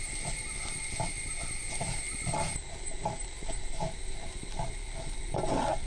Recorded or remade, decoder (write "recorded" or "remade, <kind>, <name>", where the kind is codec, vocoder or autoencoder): recorded